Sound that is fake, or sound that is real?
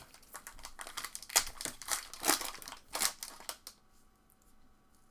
real